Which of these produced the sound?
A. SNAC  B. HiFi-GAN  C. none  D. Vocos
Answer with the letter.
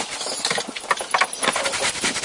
C